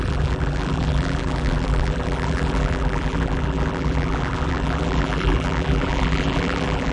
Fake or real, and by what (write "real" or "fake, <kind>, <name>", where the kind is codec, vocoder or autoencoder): fake, vocoder, BigVGAN v2